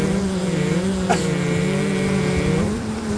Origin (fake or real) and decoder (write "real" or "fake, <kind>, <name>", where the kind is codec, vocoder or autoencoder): fake, vocoder, BigVGAN v2